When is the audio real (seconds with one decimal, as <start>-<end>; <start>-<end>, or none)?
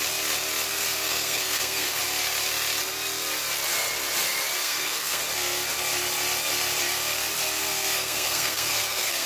0.0-0.7; 2.0-4.6; 5.2-7.6